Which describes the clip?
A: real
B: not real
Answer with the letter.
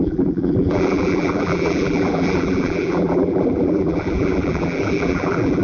B